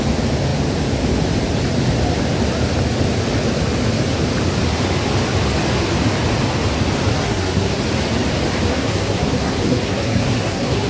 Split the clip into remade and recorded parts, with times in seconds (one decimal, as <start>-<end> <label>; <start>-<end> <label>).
0.0-7.2 recorded; 7.2-7.8 remade; 7.8-8.7 recorded; 8.7-10.9 remade